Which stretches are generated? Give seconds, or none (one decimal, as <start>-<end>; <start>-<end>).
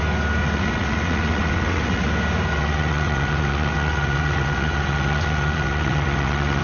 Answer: 0.4-2.1; 2.5-6.6